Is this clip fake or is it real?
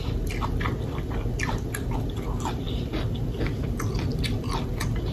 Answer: real